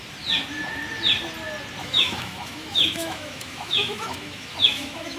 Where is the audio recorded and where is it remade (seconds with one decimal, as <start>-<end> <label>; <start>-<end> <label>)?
0.0-1.8 recorded; 1.8-5.2 remade